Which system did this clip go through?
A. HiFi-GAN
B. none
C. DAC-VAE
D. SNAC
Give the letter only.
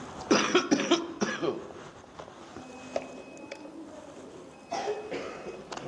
B